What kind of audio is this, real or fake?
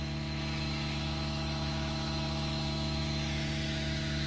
fake